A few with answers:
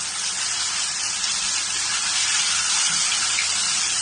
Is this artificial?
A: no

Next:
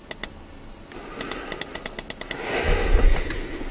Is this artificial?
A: no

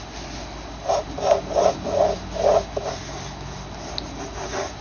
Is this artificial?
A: no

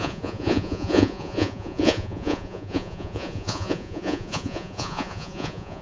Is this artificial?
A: yes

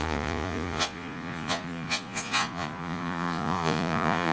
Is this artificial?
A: yes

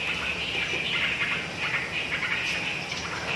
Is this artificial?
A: no